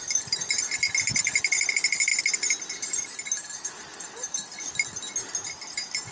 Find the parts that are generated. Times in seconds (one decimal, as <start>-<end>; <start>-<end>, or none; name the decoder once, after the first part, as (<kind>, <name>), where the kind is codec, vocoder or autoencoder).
none